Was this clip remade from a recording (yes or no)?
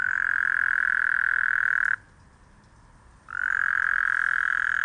no